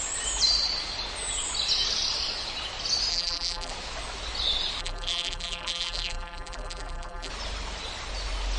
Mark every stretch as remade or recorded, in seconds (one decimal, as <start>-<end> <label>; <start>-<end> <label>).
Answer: 0.0-3.1 recorded; 3.1-3.7 remade; 3.7-4.8 recorded; 4.8-7.3 remade; 7.3-8.6 recorded